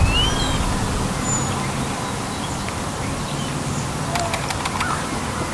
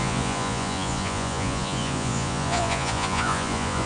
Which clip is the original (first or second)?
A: first